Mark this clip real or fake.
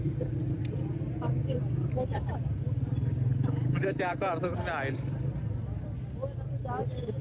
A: real